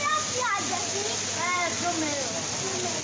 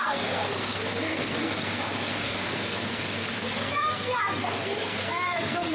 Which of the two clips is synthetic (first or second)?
second